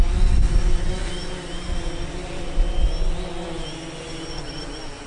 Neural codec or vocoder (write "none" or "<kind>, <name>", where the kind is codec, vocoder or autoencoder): none